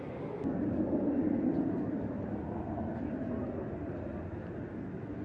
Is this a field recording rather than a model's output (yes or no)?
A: yes